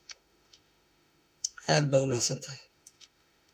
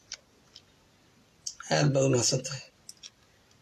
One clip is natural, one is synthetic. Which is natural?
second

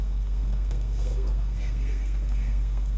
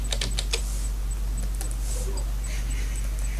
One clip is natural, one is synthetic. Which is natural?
second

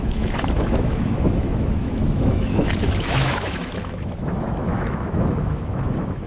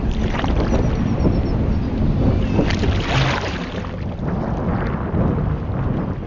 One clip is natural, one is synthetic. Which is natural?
second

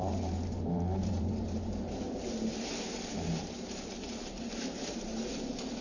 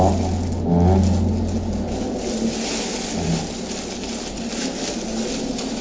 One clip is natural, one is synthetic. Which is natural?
second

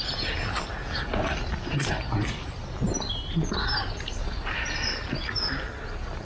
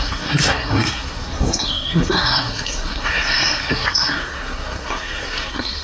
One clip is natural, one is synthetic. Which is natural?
first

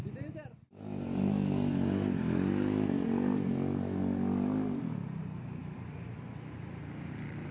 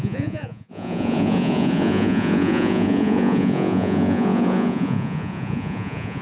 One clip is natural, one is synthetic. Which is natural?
first